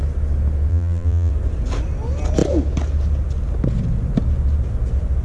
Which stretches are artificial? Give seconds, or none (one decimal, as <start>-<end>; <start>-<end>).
0.7-1.3